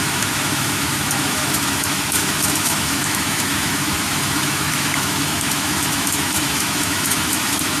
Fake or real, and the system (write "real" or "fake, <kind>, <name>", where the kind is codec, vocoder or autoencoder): fake, autoencoder, DAC-VAE